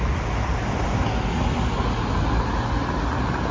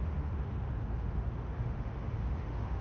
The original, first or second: first